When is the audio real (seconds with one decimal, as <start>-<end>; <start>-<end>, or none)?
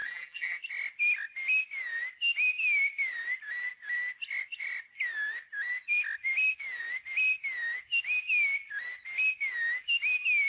0.6-10.5